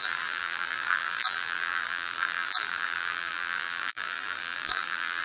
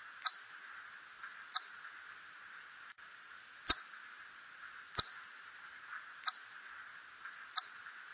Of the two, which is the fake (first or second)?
first